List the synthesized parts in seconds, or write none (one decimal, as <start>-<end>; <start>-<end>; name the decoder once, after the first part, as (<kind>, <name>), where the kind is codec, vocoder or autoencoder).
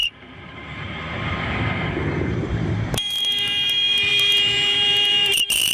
0.0-5.7 (vocoder, BigVGAN v2)